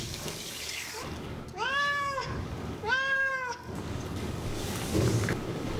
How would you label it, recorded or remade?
remade